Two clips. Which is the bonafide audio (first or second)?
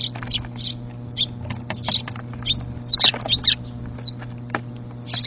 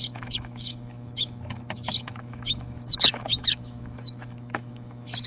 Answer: first